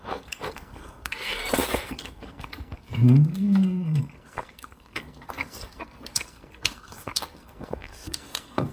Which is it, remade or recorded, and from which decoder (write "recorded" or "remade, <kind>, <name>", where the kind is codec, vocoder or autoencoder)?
remade, codec, SNAC